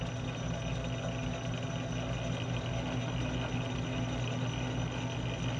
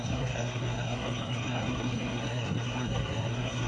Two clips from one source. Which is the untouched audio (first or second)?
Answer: first